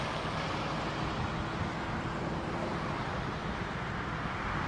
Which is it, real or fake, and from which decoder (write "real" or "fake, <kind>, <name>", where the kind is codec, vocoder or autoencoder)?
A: real